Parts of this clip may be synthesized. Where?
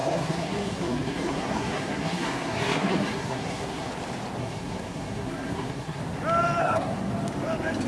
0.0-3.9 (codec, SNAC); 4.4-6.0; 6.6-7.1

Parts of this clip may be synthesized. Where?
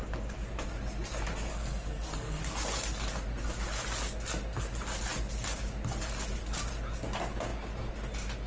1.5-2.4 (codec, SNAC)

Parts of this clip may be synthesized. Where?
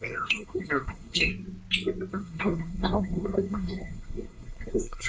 0.0-1.3 (codec, SNAC); 2.1-5.1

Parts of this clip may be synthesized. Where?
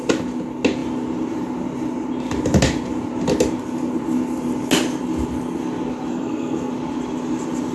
6.1-6.7 (codec, SNAC)